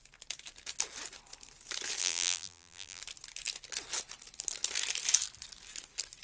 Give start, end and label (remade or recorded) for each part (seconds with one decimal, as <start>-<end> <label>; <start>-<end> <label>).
0.0-2.0 recorded; 2.0-3.0 remade; 3.0-6.2 recorded

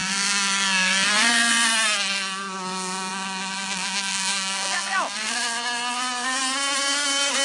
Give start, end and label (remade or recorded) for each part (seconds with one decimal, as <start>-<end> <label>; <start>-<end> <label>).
0.0-1.7 remade; 1.7-3.1 recorded; 3.1-6.4 remade; 6.4-7.4 recorded

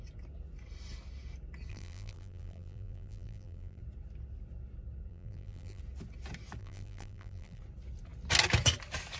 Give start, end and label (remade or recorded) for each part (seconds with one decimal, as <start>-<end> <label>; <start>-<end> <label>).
0.0-1.7 recorded; 1.7-3.8 remade; 3.8-5.1 recorded; 5.1-5.8 remade; 5.8-6.6 recorded; 6.6-7.6 remade; 7.6-9.2 recorded

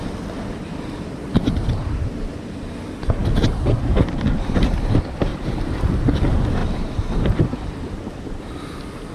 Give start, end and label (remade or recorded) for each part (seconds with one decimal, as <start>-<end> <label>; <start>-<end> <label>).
0.0-5.3 recorded; 5.3-5.9 remade; 5.9-6.6 recorded; 6.6-8.1 remade; 8.1-9.1 recorded

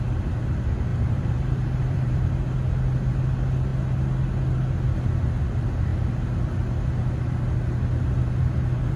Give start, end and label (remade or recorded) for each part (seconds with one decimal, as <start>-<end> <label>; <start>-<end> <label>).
0.0-0.9 recorded; 0.9-2.2 remade; 2.2-9.0 recorded

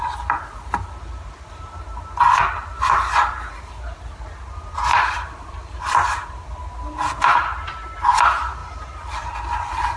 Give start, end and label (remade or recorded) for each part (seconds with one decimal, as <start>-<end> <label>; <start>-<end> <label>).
0.0-4.9 recorded; 4.9-5.8 remade; 5.8-10.0 recorded

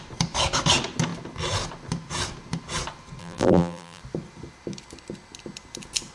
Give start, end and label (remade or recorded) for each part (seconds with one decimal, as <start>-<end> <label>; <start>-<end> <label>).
0.0-3.2 recorded; 3.2-4.0 remade; 4.0-6.1 recorded